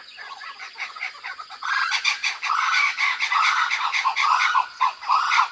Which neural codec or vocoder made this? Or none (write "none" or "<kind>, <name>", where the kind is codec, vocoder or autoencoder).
vocoder, Vocos